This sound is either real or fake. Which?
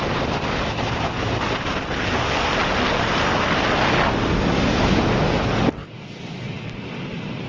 real